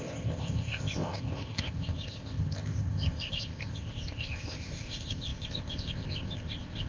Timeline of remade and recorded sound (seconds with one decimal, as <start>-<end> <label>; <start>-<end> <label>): 0.0-6.9 remade